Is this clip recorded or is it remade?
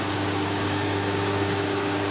remade